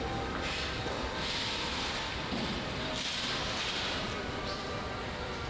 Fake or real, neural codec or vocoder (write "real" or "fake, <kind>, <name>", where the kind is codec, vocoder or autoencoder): fake, vocoder, BigVGAN v2